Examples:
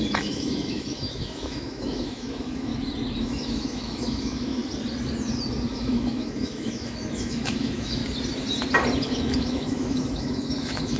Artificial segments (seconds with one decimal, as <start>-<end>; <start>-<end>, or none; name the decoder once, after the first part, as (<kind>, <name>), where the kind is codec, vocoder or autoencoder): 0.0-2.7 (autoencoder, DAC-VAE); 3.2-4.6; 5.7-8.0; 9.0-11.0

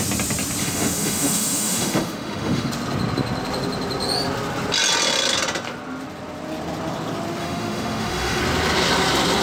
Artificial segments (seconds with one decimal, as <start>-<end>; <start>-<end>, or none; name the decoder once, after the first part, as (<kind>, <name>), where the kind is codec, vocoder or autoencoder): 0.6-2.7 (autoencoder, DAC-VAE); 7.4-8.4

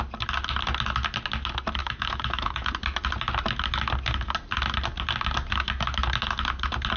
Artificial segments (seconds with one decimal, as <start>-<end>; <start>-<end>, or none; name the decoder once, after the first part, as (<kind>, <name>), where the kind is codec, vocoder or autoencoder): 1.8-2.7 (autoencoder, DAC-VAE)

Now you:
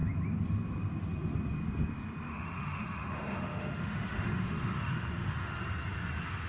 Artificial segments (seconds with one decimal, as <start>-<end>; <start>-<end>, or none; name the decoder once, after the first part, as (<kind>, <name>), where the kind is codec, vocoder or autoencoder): 2.3-5.6 (autoencoder, DAC-VAE)

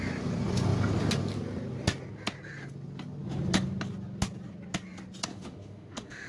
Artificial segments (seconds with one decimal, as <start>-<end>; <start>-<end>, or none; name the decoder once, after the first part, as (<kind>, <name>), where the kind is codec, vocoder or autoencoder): 5.3-6.3 (autoencoder, DAC-VAE)

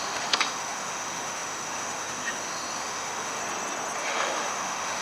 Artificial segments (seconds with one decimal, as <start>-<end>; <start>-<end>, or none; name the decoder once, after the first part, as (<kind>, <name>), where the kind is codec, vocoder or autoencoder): 0.0-3.4 (autoencoder, DAC-VAE); 4.0-5.0

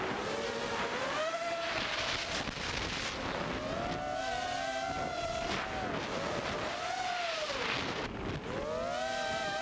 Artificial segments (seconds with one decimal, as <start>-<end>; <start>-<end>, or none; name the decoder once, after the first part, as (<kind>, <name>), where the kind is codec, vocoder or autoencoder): 1.2-1.7 (autoencoder, DAC-VAE)